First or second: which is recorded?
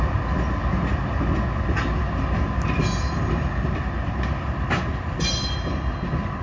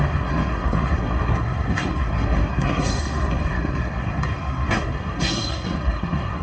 first